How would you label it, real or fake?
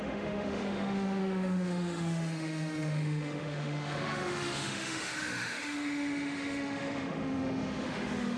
fake